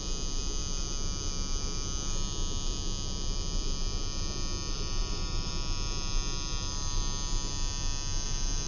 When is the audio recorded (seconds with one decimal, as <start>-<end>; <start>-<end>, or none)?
0.0-5.0; 5.5-8.7